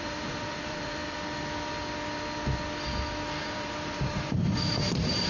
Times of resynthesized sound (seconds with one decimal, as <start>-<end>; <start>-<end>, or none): 0.0-1.0; 3.4-5.3